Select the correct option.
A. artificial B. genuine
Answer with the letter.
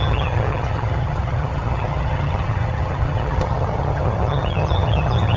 A